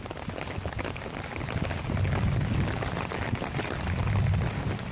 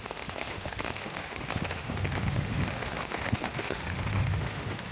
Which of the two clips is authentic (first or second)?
first